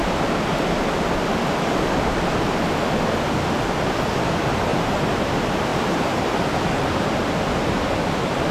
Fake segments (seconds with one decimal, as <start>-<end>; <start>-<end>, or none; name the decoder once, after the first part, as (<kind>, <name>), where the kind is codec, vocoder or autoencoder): 4.7-5.3 (vocoder, BigVGAN v2); 5.7-6.6